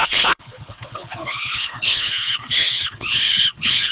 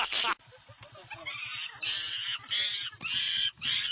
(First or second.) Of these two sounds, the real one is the second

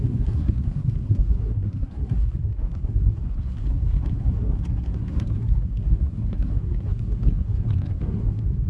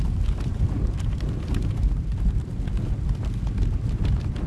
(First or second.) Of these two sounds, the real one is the second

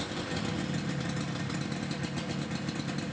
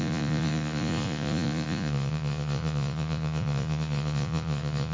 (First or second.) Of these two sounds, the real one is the first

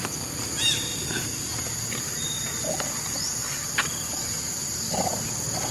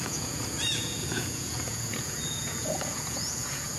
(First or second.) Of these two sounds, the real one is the first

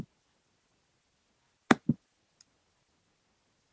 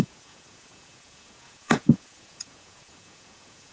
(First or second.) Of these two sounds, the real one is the first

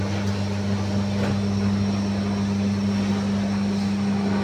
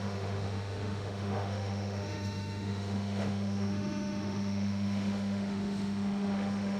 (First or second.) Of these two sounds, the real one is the first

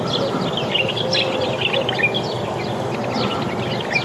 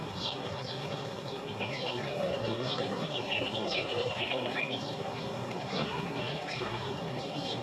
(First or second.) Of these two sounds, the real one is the first